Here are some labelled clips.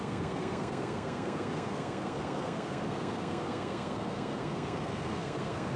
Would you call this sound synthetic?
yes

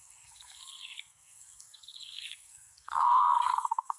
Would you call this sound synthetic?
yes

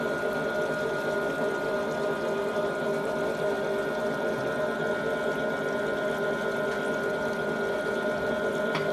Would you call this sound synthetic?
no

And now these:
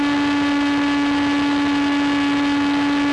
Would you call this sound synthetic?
no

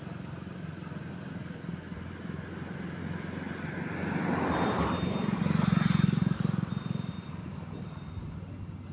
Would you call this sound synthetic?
no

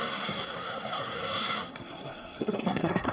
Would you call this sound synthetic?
yes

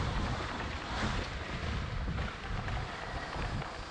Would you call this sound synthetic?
yes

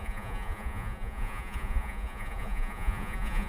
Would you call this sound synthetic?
yes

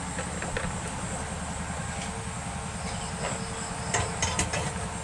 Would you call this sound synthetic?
no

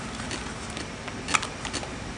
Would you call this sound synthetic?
no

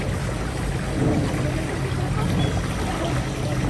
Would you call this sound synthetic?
no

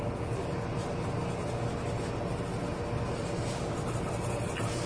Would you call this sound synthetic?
no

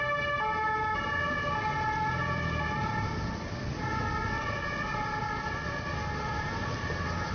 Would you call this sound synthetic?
no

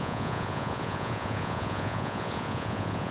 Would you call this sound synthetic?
yes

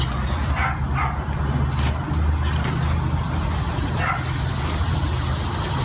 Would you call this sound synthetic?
no